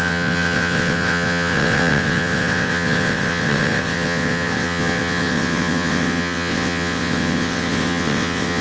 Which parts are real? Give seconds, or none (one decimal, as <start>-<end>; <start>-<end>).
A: none

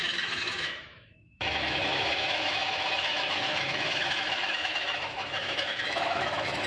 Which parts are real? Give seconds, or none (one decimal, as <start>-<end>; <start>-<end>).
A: none

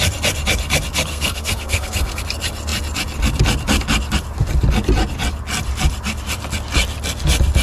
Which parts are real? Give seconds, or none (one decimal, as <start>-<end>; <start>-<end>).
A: 0.0-1.1; 2.2-7.6